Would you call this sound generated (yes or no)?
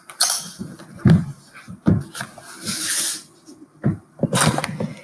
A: no